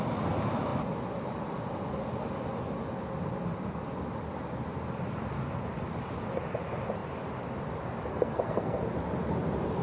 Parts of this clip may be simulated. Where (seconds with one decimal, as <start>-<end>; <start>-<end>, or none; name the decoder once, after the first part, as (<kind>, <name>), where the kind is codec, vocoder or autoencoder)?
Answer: 8.1-8.8 (codec, SNAC)

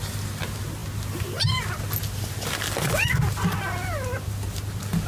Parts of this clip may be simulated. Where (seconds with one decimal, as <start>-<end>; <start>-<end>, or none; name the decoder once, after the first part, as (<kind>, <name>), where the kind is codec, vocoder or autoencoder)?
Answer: none